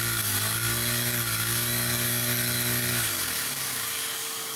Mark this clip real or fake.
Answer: fake